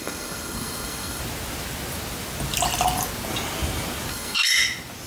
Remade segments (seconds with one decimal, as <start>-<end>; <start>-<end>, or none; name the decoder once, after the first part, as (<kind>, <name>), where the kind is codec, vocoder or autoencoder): 0.0-1.2 (codec, SNAC); 4.1-4.5